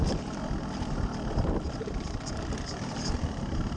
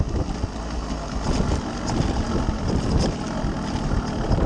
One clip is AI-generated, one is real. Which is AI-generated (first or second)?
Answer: first